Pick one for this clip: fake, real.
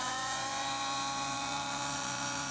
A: fake